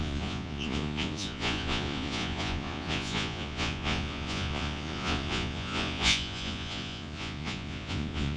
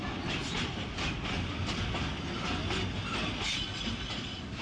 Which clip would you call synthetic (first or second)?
first